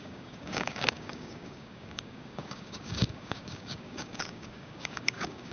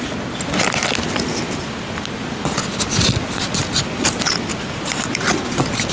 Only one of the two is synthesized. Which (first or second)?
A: first